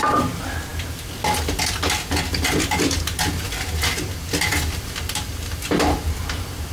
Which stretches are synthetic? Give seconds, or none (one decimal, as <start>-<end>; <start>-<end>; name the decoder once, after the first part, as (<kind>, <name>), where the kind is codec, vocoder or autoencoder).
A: none